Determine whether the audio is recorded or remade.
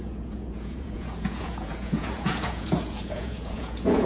remade